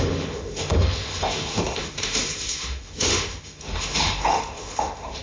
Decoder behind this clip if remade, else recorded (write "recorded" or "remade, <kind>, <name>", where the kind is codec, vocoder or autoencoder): remade, autoencoder, DAC-VAE